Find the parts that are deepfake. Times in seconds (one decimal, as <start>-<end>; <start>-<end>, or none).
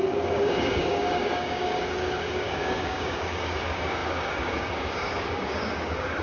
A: 0.0-6.2